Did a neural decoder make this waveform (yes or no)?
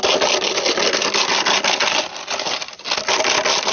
no